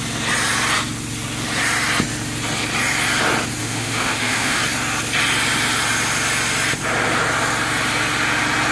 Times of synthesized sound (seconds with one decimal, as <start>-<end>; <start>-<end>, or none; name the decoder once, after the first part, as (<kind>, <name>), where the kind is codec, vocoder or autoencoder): 3.6-4.6 (autoencoder, DAC-VAE)